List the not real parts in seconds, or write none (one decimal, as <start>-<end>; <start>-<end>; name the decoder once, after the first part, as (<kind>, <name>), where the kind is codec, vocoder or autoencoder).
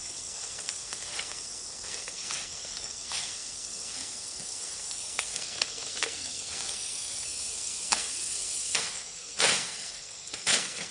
0.0-10.9 (codec, SNAC)